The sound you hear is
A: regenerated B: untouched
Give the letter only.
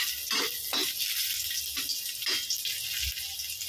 B